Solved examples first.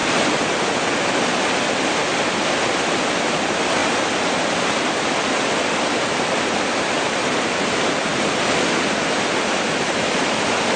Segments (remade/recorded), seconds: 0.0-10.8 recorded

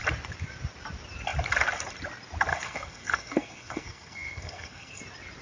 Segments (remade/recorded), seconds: 0.0-2.5 recorded; 2.5-5.0 remade; 5.0-5.4 recorded

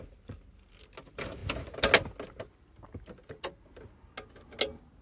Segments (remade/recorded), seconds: 0.0-5.0 recorded

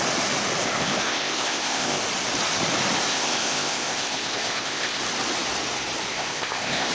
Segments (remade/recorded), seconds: 0.0-0.6 recorded; 0.6-2.0 remade; 2.0-3.1 recorded; 3.1-5.0 remade; 5.0-6.1 recorded; 6.1-6.9 remade